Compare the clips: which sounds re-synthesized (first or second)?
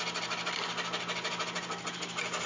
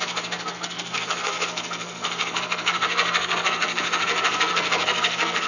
second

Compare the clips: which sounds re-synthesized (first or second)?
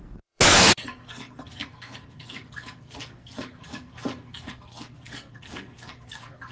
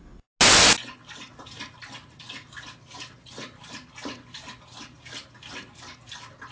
first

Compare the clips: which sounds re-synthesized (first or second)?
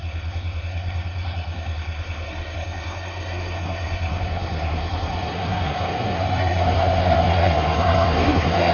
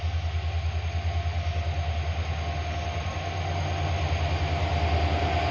first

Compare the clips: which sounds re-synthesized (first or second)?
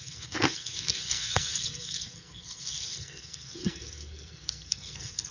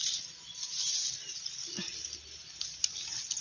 first